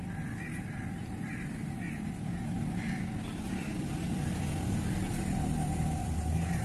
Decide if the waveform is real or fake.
real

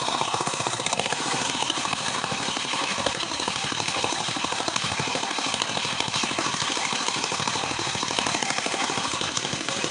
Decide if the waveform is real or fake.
fake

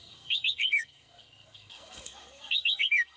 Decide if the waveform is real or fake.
fake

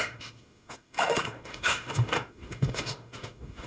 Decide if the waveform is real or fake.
fake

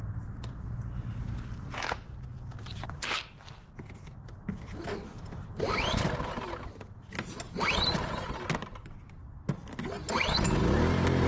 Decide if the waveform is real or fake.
real